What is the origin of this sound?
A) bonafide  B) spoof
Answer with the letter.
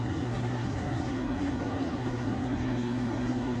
B